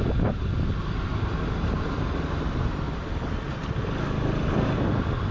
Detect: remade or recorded recorded